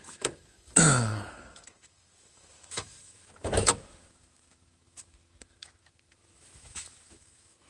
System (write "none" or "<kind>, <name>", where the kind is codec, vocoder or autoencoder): autoencoder, DAC-VAE